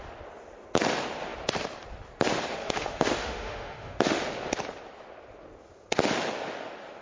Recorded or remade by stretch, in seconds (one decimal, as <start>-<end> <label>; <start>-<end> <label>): 0.0-2.5 recorded; 2.5-4.2 remade; 4.2-7.0 recorded